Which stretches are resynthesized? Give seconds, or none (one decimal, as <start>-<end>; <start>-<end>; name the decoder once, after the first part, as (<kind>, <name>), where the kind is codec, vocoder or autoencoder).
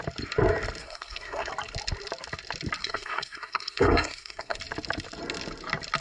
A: 0.8-1.5 (codec, SNAC); 2.8-4.6